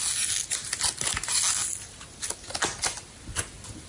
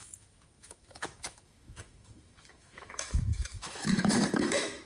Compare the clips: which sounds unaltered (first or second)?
first